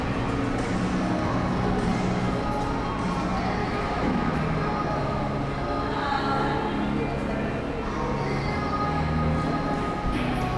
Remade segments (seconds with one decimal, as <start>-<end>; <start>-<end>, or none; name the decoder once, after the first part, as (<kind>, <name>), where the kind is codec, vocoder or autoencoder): 3.6-4.4 (autoencoder, DAC-VAE)